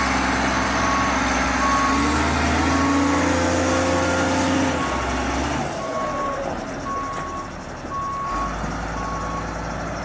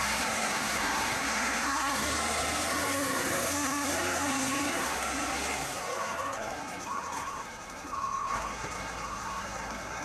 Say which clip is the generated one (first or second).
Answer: second